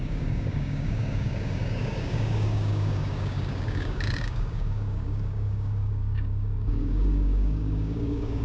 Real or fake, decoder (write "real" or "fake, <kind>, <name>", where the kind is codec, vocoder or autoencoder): fake, codec, DAC